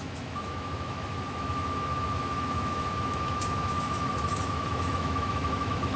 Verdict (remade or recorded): remade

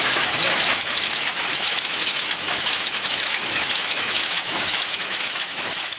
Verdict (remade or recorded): remade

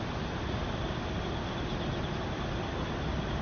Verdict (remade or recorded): recorded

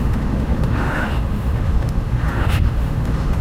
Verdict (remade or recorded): remade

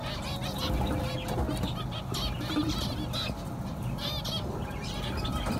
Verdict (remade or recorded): recorded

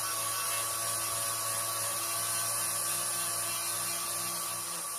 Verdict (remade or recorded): recorded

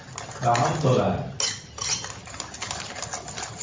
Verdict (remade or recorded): recorded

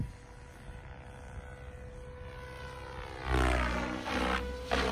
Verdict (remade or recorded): recorded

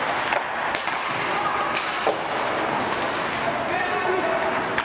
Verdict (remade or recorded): recorded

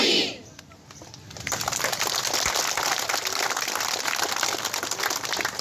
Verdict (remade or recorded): recorded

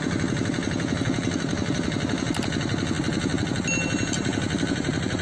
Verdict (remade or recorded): recorded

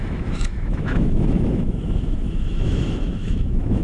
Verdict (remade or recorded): remade